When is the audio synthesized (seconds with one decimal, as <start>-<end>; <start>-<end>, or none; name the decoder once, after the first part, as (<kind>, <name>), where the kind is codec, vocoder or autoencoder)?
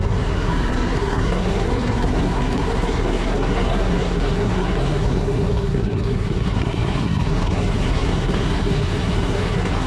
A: 0.0-9.9 (codec, SNAC)